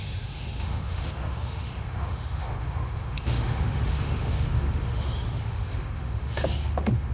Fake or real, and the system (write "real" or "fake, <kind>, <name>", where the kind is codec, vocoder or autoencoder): fake, autoencoder, DAC-VAE